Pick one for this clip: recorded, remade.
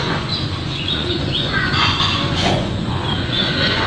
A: remade